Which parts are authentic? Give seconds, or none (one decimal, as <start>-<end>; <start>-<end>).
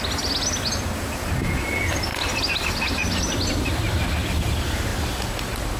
0.0-2.1; 4.1-4.9